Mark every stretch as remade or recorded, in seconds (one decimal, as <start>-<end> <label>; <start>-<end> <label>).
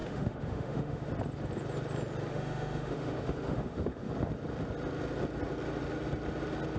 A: 0.0-1.1 remade; 1.1-2.3 recorded; 2.3-4.1 remade; 4.1-6.8 recorded